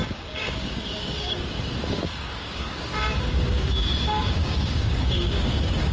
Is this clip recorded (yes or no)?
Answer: no